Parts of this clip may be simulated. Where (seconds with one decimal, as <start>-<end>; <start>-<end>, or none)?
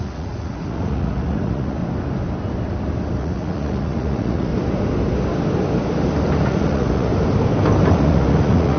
0.0-1.8; 3.2-4.5; 6.4-7.1; 7.9-8.8